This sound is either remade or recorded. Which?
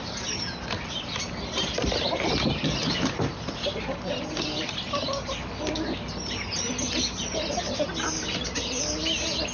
recorded